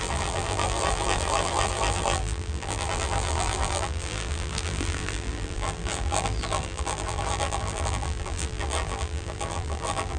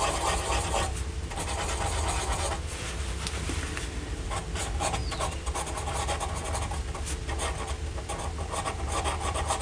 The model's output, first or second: first